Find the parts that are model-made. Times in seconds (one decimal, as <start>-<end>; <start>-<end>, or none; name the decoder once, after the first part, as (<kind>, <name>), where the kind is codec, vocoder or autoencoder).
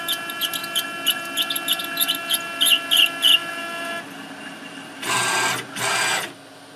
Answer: none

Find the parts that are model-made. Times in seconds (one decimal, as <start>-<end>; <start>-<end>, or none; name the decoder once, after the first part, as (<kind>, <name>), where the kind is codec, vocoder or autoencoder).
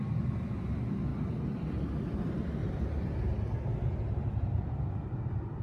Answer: 2.6-3.3 (vocoder, BigVGAN v2)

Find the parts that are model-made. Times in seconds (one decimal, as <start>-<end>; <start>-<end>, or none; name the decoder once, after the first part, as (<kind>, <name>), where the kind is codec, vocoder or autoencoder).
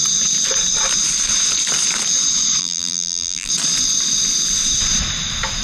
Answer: 2.6-3.5 (vocoder, BigVGAN v2)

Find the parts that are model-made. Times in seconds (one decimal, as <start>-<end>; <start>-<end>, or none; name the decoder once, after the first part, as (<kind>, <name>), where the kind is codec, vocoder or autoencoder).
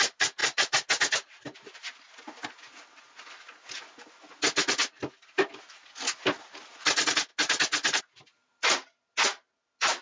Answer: none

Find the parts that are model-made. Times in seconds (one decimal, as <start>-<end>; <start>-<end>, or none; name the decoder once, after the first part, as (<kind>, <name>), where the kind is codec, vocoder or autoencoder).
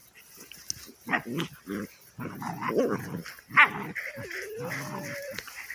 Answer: none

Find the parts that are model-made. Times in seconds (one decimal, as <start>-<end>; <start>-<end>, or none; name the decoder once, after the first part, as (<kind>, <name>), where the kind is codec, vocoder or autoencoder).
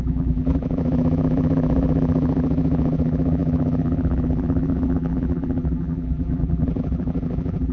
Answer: 0.0-7.7 (vocoder, BigVGAN v2)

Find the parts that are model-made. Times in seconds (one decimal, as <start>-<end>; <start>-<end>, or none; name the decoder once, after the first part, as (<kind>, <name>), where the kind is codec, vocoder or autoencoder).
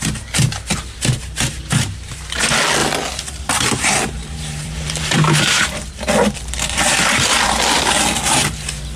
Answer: 2.8-7.4 (vocoder, BigVGAN v2)